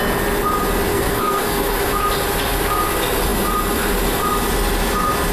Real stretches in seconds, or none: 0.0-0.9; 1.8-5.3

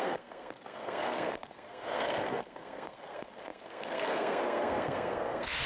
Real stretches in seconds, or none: none

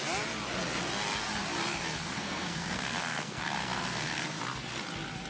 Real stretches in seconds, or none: 0.0-2.1; 4.4-5.3

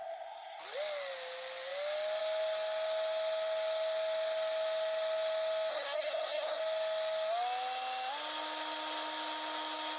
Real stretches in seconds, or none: 0.6-5.7; 6.6-10.0

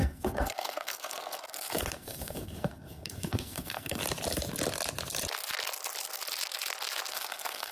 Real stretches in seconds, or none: 4.0-7.1

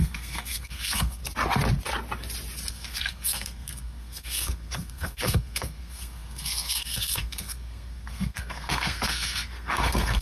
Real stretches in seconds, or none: 1.2-2.7

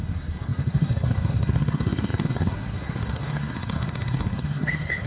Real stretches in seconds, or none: none